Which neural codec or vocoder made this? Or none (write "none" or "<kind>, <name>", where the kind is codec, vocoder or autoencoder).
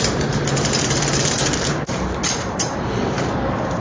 vocoder, BigVGAN v2